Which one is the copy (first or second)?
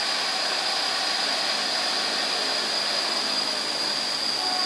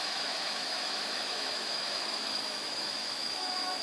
second